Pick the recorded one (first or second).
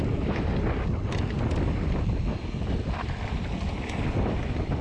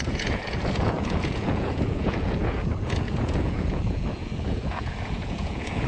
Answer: first